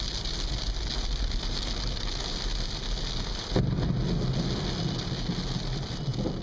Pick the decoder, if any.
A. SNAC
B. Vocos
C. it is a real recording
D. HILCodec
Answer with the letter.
C